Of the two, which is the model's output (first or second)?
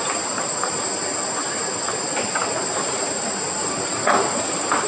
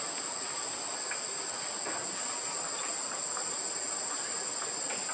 first